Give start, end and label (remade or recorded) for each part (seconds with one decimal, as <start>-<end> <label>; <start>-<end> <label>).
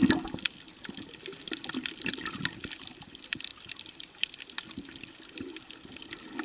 0.0-3.5 recorded; 3.5-4.4 remade; 4.4-6.4 recorded